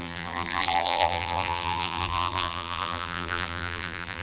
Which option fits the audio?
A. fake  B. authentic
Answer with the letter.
A